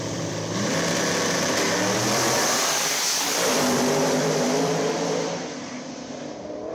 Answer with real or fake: fake